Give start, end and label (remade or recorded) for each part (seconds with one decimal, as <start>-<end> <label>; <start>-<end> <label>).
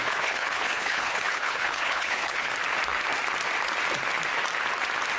0.0-2.5 remade; 2.5-5.2 recorded